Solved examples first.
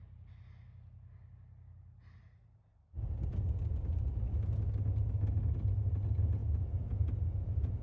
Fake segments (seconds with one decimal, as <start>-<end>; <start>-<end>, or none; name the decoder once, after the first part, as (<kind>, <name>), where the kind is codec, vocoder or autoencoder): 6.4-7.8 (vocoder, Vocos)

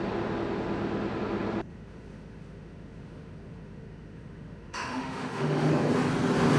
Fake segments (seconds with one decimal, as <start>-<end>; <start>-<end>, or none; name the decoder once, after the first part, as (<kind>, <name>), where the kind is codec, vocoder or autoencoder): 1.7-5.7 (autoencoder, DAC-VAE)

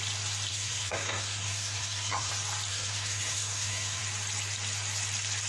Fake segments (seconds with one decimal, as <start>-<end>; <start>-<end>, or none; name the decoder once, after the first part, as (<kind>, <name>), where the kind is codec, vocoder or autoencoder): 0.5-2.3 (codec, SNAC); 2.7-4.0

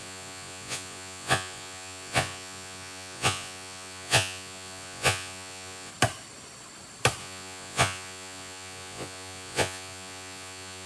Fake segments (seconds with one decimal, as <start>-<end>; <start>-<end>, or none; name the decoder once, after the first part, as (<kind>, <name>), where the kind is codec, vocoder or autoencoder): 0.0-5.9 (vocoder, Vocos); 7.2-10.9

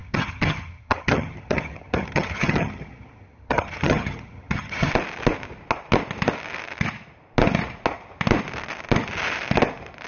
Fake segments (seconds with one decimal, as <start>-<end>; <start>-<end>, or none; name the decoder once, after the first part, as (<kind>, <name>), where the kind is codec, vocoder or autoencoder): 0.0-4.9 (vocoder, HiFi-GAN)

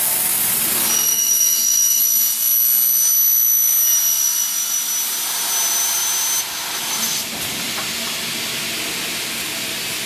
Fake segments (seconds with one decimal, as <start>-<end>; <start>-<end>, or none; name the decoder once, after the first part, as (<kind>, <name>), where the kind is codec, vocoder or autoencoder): 1.1-2.0 (autoencoder, DAC-VAE)

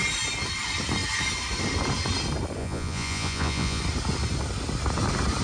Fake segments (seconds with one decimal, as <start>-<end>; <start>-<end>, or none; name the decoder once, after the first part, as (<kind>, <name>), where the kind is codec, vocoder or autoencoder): 2.6-3.8 (vocoder, Vocos)